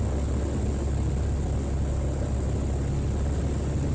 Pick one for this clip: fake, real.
real